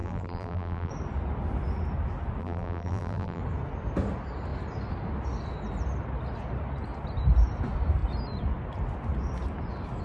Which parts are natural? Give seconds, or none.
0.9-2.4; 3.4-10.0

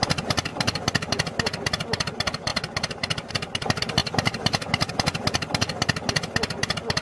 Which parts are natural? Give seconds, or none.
0.0-0.5; 1.1-2.5; 3.3-4.0; 4.9-7.0

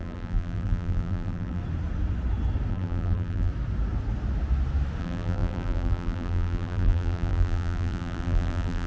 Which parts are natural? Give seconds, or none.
1.6-2.7; 3.5-5.0

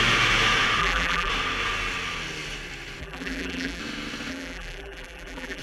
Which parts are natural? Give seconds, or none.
0.0-0.8; 1.3-3.0; 3.8-4.3

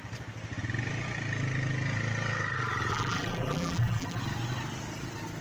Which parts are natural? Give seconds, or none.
0.0-2.9; 4.2-5.4

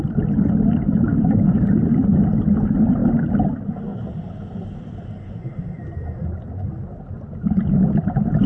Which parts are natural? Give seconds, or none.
0.0-8.5